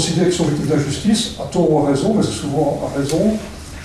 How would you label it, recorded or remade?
remade